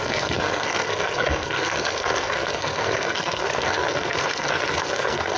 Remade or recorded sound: remade